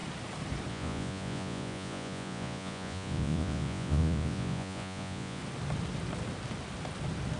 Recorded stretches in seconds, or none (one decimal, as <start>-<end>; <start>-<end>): 0.0-0.7; 5.4-7.4